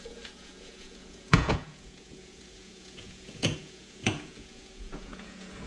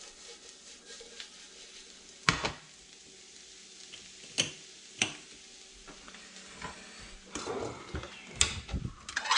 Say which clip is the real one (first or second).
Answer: second